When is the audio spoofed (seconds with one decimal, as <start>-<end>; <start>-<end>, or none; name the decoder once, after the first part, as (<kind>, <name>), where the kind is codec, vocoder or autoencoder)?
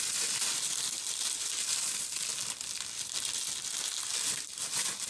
none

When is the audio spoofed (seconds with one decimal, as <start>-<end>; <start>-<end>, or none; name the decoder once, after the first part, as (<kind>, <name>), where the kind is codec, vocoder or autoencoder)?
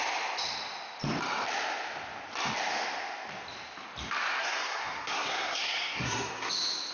4.4-6.5 (codec, SNAC)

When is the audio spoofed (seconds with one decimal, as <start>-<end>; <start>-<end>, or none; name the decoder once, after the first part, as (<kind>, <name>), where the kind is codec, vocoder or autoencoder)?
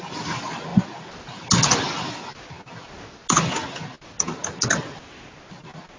none